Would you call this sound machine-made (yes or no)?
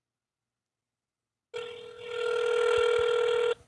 no